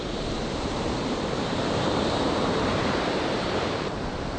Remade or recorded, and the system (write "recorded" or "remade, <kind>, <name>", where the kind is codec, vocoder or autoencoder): remade, vocoder, BigVGAN v2